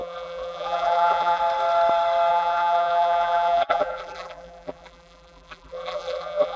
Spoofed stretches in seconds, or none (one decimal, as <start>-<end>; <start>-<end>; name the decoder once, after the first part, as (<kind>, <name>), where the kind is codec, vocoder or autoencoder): 0.0-1.4 (vocoder, BigVGAN v2); 2.3-6.6